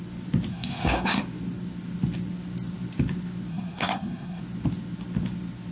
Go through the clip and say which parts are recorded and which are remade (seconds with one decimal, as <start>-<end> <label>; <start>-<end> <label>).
0.0-0.5 recorded; 0.5-1.2 remade; 1.2-3.5 recorded; 3.5-4.4 remade; 4.4-5.7 recorded